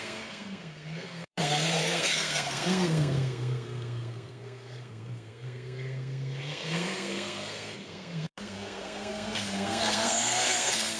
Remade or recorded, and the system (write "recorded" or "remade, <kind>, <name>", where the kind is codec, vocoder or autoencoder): remade, codec, SNAC